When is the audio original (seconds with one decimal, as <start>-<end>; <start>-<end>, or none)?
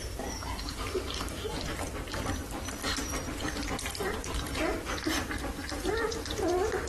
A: 3.2-3.8; 5.9-6.9